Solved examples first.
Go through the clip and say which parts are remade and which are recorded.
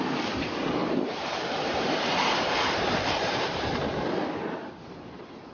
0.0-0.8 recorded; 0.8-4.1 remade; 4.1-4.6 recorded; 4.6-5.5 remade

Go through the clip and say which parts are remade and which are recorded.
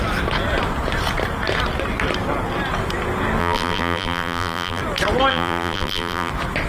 0.0-3.4 recorded; 3.4-4.8 remade; 4.8-5.3 recorded; 5.3-6.3 remade; 6.3-6.7 recorded